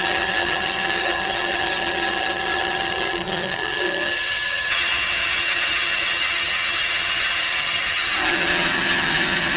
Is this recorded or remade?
remade